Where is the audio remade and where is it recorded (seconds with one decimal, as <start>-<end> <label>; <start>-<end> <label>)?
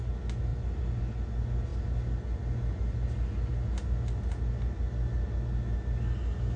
0.0-0.5 recorded; 0.5-1.0 remade; 1.0-6.6 recorded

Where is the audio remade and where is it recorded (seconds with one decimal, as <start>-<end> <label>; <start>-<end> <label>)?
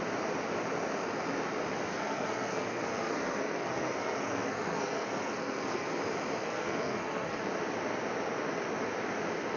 0.0-1.9 recorded; 1.9-6.0 remade; 6.0-6.4 recorded; 6.4-7.4 remade; 7.4-9.6 recorded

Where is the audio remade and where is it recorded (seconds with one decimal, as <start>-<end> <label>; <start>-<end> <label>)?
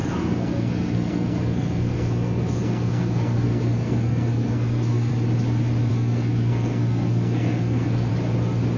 0.0-5.1 remade; 5.1-5.9 recorded; 5.9-8.1 remade; 8.1-8.8 recorded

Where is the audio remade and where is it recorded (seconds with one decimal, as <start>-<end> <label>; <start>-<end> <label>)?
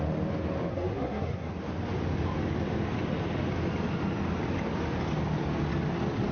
0.0-0.7 recorded; 0.7-1.5 remade; 1.5-6.3 recorded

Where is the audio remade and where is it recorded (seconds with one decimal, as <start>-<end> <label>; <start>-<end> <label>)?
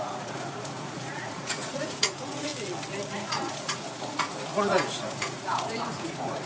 0.0-2.5 remade; 2.5-3.1 recorded; 3.1-6.5 remade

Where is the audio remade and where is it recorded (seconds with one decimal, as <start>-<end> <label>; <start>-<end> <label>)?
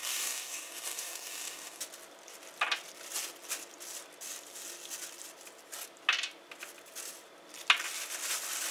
0.0-1.8 remade; 1.8-8.7 recorded